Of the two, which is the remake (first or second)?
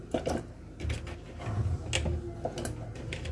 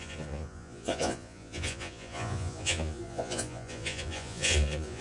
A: second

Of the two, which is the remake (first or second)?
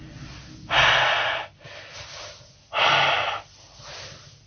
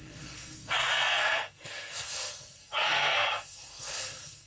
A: second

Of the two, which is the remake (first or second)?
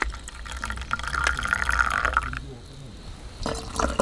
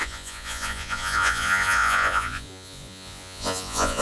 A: second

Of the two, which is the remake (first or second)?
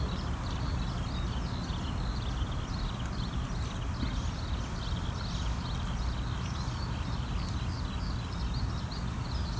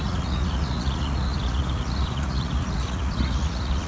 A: second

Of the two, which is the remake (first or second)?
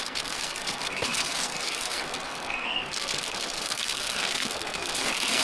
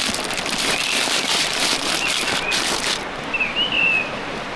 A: first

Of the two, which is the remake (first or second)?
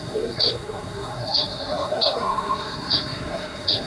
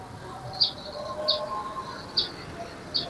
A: first